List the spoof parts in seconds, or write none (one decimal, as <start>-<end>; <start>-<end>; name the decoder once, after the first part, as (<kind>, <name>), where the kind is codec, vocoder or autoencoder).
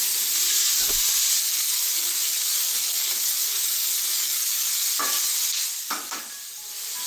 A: 1.5-4.7 (codec, DAC); 5.8-6.6